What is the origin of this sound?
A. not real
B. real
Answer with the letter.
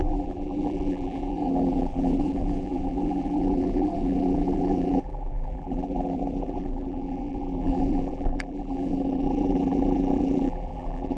A